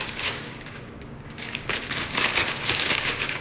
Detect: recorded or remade remade